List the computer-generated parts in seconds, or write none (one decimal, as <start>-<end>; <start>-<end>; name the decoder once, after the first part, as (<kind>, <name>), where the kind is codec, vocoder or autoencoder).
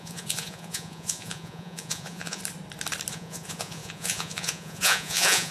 0.0-2.4 (vocoder, Vocos); 3.1-5.5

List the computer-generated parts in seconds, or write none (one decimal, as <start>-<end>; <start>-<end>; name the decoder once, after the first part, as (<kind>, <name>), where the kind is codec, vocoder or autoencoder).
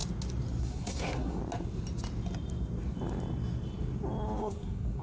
0.6-1.4 (codec, SNAC); 4.4-5.0